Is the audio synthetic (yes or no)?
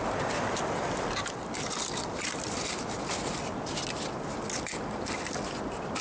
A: no